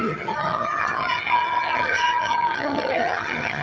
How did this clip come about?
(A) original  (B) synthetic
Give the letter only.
B